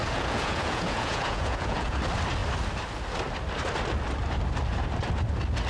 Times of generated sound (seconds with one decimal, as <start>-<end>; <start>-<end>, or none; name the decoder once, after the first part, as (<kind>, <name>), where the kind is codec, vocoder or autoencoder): 0.0-2.0 (vocoder, Vocos)